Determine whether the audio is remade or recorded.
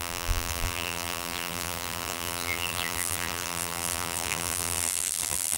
remade